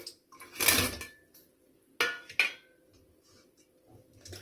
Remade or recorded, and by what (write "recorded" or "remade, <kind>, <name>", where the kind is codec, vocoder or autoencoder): recorded